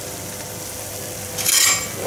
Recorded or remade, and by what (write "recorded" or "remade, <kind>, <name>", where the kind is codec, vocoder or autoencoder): recorded